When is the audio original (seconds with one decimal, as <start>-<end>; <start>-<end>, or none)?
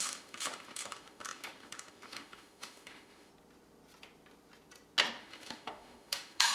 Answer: 3.3-5.2